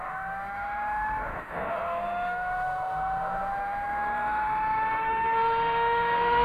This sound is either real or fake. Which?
fake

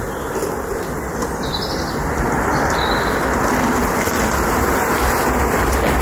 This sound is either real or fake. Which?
fake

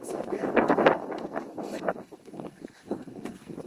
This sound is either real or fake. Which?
fake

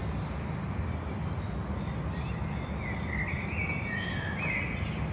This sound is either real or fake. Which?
real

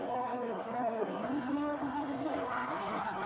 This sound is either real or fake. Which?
fake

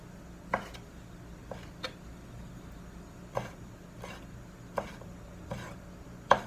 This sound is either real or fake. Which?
real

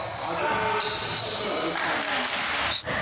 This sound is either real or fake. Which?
real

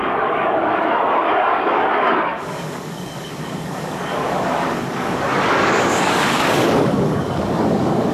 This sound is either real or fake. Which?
fake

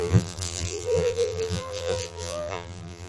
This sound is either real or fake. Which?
fake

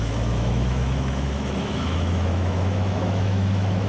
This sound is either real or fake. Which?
fake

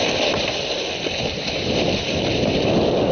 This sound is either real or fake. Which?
real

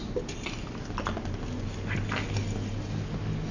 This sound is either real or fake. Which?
real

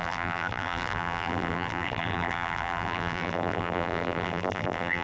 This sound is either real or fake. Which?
fake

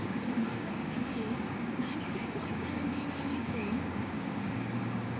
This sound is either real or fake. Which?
fake